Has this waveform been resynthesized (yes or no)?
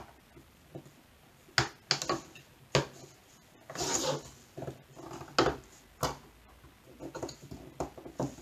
no